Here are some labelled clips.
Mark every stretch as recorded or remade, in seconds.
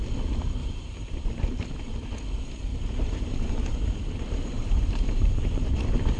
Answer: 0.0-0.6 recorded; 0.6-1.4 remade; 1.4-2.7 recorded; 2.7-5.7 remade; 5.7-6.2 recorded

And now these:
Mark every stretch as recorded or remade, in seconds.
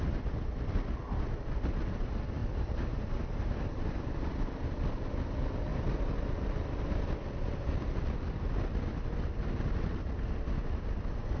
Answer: 0.0-2.4 recorded; 2.4-4.1 remade; 4.1-11.4 recorded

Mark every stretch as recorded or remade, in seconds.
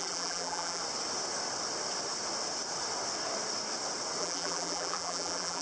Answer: 0.0-0.8 remade; 0.8-4.2 recorded; 4.2-5.6 remade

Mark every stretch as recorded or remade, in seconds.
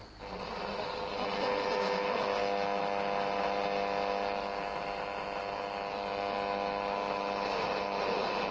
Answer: 0.0-8.5 recorded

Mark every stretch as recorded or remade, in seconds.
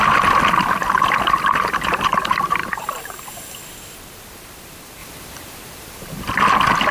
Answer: 0.0-2.6 recorded; 2.6-3.3 remade; 3.3-5.0 recorded; 5.0-6.3 remade; 6.3-6.9 recorded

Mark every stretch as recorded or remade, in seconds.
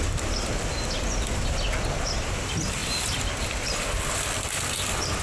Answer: 0.0-5.2 recorded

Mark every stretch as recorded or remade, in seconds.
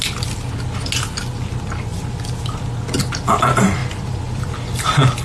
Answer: 0.0-3.8 recorded; 3.8-4.5 remade; 4.5-5.2 recorded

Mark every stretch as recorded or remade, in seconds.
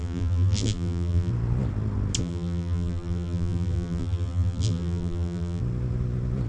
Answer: 0.0-1.3 remade; 1.3-2.2 recorded; 2.2-5.6 remade; 5.6-6.5 recorded